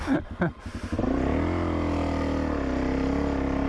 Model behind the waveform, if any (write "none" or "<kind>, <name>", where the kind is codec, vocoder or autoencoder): none